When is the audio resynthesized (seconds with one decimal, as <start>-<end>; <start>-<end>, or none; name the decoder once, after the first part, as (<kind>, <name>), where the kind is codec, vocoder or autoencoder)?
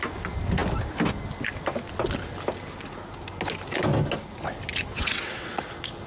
4.9-5.6 (vocoder, WaveNeXt)